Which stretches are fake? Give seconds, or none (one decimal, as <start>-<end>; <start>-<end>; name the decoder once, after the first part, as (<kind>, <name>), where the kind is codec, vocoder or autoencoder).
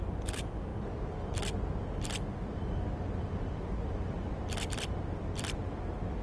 none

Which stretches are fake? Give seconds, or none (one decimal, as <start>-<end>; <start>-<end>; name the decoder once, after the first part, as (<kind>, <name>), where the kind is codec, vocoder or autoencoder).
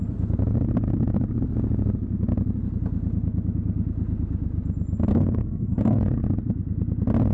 5.1-6.0 (codec, SNAC)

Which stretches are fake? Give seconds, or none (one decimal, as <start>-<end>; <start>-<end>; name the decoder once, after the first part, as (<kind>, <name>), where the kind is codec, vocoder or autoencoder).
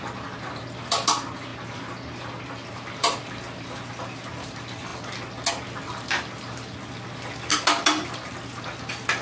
none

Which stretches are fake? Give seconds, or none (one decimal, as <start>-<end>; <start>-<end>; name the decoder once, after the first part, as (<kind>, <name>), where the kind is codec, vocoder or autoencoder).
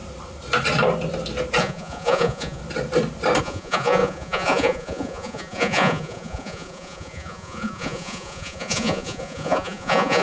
1.6-2.6 (vocoder, Vocos); 3.4-10.2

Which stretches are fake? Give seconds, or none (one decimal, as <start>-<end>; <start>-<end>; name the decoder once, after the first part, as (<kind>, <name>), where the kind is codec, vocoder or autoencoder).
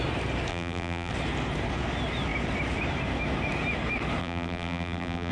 0.5-1.1 (vocoder, BigVGAN v2); 4.2-5.3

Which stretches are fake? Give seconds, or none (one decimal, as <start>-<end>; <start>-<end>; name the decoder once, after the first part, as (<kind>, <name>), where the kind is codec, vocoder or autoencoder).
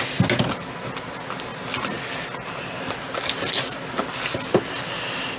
none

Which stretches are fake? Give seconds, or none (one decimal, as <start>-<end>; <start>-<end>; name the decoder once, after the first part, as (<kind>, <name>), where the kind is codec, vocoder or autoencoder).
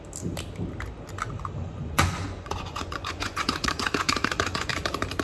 1.6-4.7 (vocoder, Vocos)